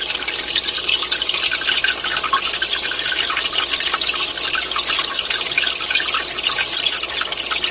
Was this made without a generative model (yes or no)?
yes